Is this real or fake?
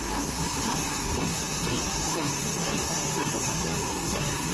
fake